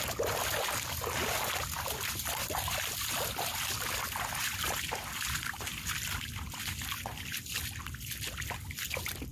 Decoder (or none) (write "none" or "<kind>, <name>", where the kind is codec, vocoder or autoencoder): none